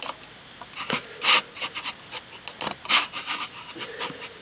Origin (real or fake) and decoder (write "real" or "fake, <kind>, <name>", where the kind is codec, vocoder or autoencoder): real